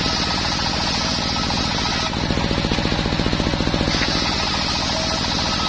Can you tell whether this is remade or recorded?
recorded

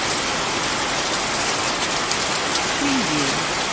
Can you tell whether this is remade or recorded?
recorded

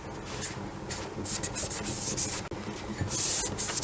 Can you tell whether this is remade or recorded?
recorded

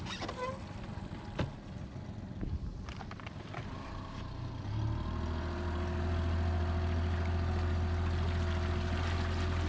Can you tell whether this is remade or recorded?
recorded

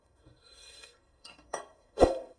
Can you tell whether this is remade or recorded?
remade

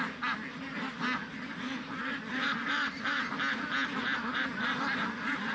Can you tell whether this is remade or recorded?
recorded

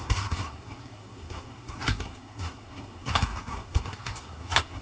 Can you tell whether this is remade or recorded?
remade